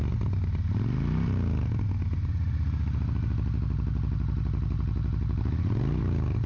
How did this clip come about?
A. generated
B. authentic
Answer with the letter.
B